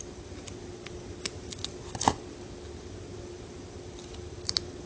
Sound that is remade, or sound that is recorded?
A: recorded